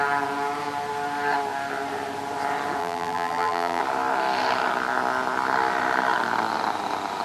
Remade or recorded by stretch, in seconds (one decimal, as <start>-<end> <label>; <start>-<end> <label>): 0.0-2.8 recorded; 2.8-3.8 remade; 3.8-7.2 recorded